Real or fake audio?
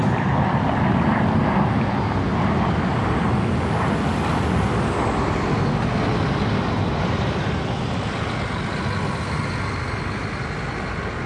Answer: real